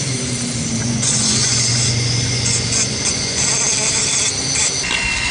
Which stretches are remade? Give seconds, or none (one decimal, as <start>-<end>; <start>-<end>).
0.8-3.4